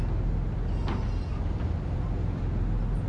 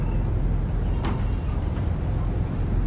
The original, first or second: first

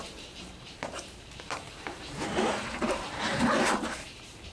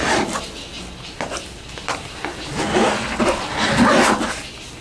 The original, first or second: second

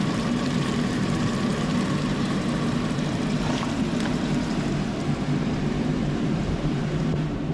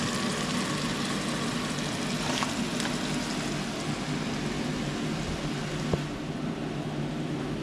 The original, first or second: second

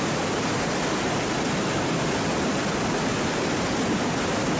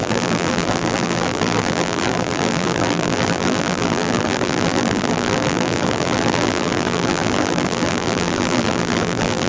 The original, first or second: first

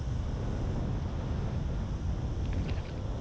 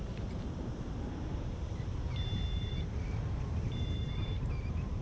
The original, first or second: first